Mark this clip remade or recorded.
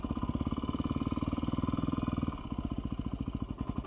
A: recorded